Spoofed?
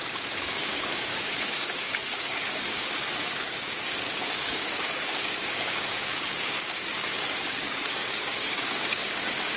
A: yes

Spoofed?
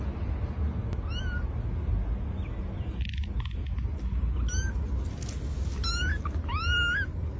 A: no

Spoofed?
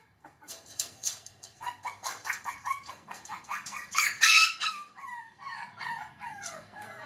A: yes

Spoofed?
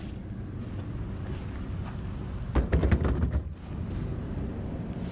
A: no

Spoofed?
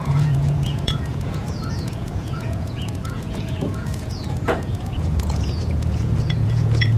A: yes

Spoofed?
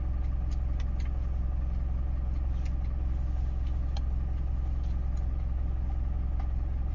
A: no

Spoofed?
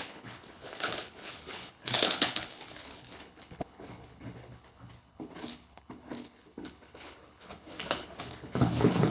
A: yes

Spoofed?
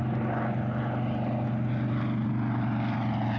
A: no